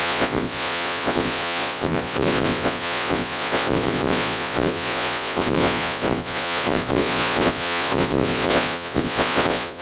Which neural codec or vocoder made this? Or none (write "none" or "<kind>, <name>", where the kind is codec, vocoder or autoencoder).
vocoder, Vocos